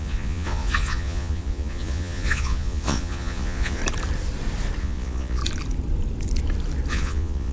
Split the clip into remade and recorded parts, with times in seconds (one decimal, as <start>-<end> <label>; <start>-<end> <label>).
0.0-3.8 remade; 3.8-4.8 recorded; 4.8-5.4 remade; 5.4-6.9 recorded; 6.9-7.5 remade